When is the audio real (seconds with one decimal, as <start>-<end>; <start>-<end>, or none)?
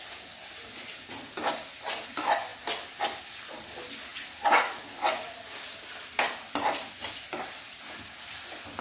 0.0-8.8